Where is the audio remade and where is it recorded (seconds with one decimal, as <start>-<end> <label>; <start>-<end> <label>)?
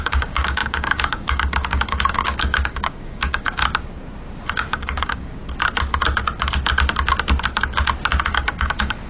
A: 0.0-3.6 remade; 3.6-4.5 recorded; 4.5-5.4 remade; 5.4-8.3 recorded; 8.3-9.1 remade